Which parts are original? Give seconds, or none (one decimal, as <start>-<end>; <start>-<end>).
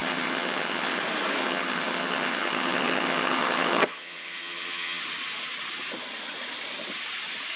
1.0-1.4; 5.0-7.6